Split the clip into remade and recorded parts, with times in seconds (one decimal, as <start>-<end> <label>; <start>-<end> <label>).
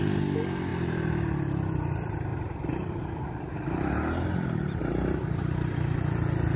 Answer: 0.0-2.3 recorded; 2.3-6.0 remade; 6.0-6.6 recorded